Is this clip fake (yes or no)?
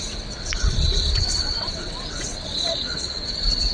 yes